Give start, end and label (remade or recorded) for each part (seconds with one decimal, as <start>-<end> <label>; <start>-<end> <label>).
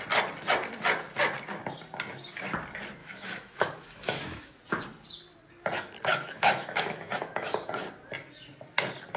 0.0-3.0 recorded; 3.0-4.6 remade; 4.6-6.1 recorded; 6.1-7.7 remade; 7.7-9.2 recorded